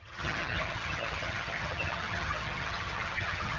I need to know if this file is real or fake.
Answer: fake